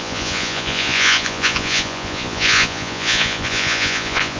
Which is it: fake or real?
fake